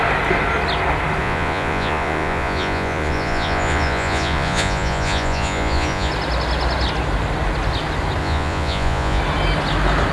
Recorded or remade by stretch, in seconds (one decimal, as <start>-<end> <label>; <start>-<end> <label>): 0.0-1.2 recorded; 1.2-6.1 remade; 6.1-8.2 recorded; 8.2-9.2 remade; 9.2-10.1 recorded